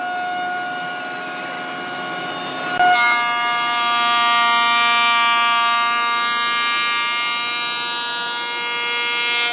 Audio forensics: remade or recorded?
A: recorded